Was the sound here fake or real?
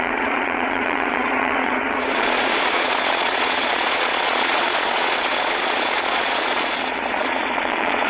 fake